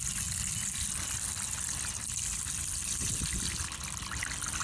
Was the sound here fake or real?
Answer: real